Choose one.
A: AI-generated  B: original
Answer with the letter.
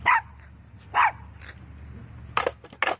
B